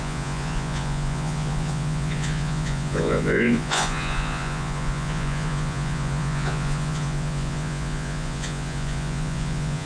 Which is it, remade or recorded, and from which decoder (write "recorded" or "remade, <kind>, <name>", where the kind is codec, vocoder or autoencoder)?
remade, vocoder, Vocos